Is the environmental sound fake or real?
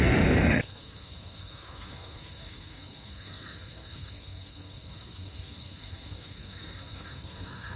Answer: fake